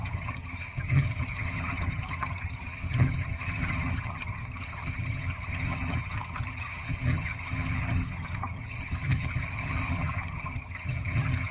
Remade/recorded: remade